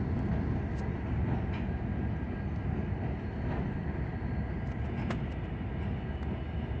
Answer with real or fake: real